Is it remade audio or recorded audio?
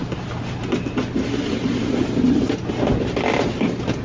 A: recorded